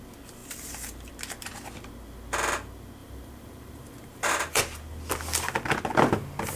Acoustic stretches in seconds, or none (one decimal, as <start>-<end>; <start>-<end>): 0.0-0.4; 1.1-3.0; 4.6-6.6